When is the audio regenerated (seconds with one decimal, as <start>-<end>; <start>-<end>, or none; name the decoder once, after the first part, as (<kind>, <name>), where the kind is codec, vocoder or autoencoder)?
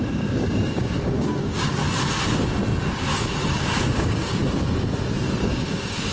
0.0-1.8 (codec, DAC); 3.4-4.4; 5.4-6.1